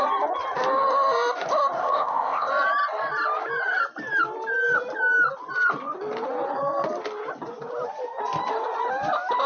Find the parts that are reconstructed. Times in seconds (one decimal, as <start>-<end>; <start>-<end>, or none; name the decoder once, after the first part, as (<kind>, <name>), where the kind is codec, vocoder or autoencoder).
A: 1.8-2.5 (codec, ZipCodec)